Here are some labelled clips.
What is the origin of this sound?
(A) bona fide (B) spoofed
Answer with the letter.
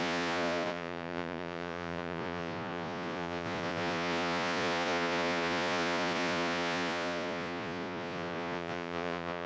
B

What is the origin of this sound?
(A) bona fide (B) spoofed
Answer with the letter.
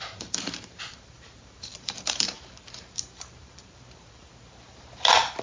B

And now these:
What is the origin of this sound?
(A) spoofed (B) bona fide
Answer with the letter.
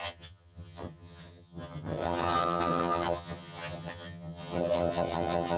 A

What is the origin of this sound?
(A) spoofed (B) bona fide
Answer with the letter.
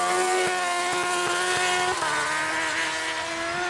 B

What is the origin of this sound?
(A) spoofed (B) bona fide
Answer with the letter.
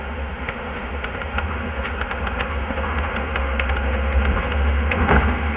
A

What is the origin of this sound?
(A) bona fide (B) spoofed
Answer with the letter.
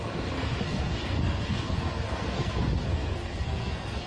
B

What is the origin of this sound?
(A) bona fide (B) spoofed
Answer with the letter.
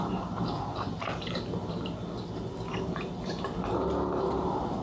A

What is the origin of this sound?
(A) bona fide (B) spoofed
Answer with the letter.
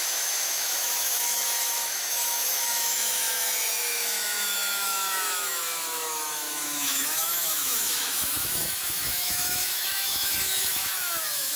B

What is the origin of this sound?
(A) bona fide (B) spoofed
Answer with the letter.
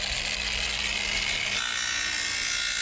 A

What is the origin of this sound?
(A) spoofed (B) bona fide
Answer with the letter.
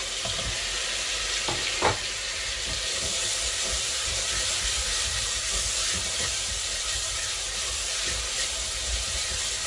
A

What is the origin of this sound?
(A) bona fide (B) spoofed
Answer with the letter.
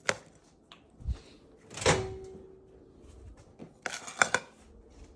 A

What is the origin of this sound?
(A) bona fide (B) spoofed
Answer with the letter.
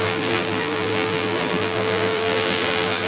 B